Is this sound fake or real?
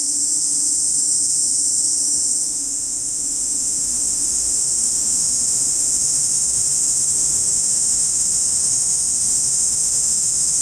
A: fake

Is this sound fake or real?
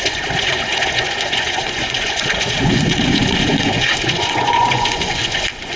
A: fake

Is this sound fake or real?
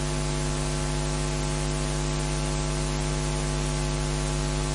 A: real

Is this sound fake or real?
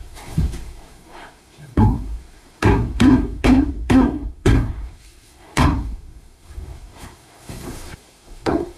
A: fake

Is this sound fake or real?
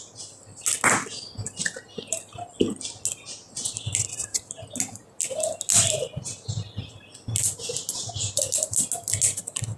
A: real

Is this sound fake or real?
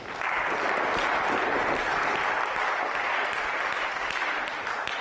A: real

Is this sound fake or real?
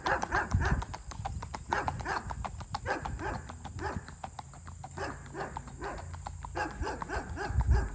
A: real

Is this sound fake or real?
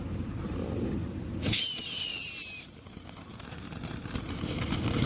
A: real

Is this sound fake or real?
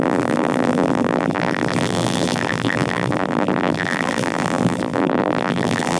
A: fake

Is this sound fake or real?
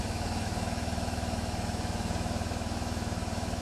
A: fake